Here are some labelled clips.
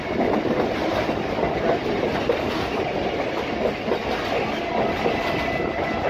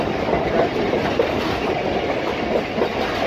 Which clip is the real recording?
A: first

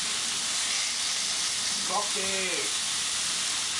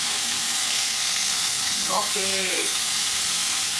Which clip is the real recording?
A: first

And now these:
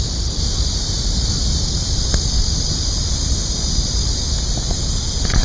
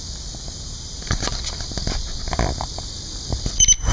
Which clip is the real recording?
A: first